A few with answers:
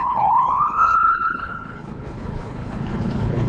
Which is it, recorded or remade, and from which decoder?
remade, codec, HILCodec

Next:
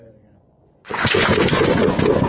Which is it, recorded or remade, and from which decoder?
remade, vocoder, Vocos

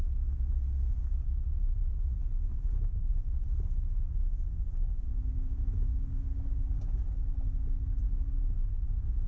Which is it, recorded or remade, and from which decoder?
recorded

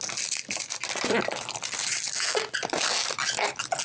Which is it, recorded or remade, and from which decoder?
recorded